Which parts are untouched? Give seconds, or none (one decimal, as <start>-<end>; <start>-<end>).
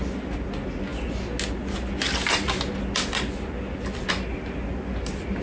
0.0-5.4